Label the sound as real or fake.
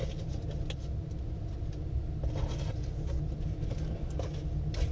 real